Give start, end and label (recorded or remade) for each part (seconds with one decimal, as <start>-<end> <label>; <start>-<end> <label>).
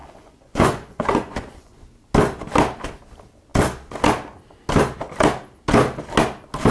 0.0-1.8 remade; 1.8-6.7 recorded